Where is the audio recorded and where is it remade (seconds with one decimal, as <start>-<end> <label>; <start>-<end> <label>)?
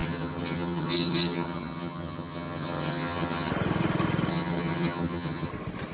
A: 0.0-3.5 remade; 3.5-4.3 recorded; 4.3-5.5 remade; 5.5-5.9 recorded